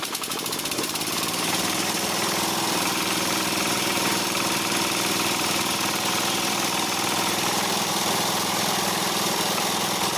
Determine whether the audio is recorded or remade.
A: remade